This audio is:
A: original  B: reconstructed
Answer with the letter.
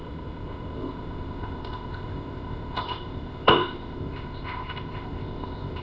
B